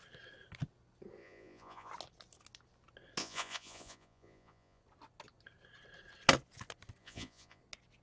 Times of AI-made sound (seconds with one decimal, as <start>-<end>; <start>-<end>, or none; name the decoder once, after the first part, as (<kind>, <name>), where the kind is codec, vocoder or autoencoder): 1.2-1.9 (vocoder, Vocos); 3.2-4.8; 7.0-7.6